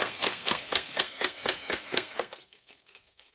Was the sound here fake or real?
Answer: fake